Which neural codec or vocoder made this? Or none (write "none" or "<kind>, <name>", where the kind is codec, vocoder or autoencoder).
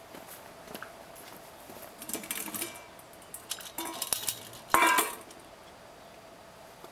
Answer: none